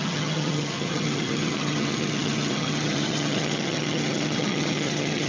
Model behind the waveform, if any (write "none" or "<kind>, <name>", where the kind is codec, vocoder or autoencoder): vocoder, HiFi-GAN